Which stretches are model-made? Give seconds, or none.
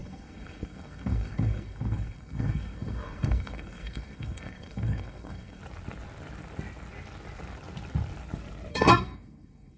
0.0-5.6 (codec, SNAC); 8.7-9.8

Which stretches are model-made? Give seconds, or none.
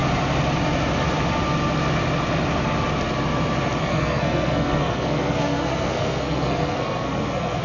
3.8-7.6 (codec, SNAC)